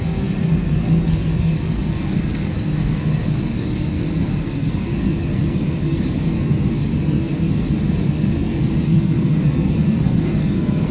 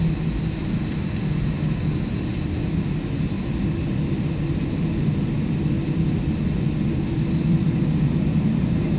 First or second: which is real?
second